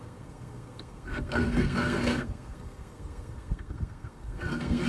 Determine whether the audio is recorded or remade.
remade